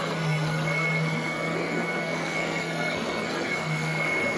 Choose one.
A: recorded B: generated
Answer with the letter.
B